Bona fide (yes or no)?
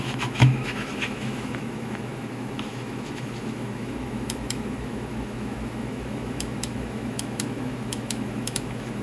no